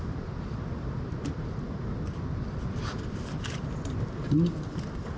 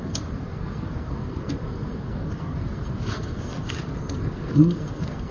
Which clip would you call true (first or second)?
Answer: first